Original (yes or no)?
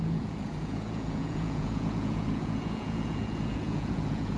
no